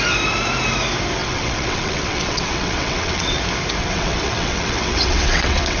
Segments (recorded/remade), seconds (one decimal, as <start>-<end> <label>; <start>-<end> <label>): 0.0-1.2 recorded; 1.2-3.4 remade; 3.4-3.8 recorded; 3.8-5.8 remade

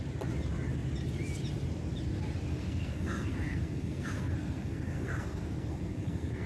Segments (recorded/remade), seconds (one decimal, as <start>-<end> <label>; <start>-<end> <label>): 0.0-2.5 recorded; 2.5-6.5 remade